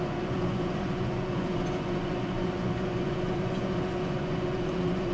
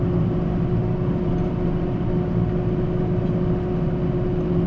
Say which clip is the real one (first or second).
second